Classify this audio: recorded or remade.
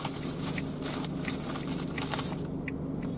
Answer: recorded